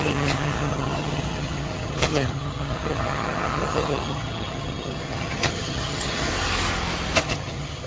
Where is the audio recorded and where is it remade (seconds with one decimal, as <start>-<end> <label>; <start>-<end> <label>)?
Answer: 0.0-6.3 remade; 6.3-7.2 recorded; 7.2-7.9 remade